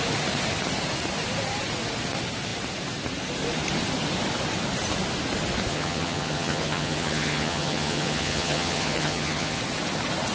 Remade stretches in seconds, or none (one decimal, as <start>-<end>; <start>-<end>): 5.7-9.6